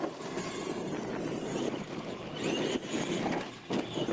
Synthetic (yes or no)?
no